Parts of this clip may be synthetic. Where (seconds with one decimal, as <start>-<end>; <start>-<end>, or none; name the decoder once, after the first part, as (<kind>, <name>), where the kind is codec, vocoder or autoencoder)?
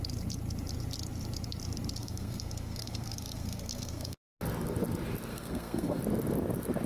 2.0-4.2 (codec, SNAC); 5.3-6.0